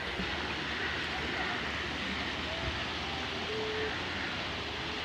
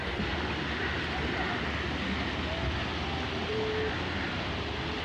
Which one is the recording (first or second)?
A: first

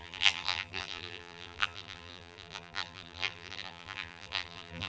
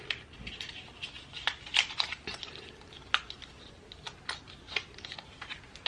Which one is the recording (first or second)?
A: second